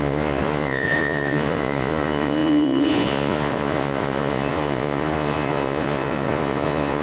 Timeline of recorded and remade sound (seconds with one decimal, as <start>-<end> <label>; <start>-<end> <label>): 0.0-7.0 remade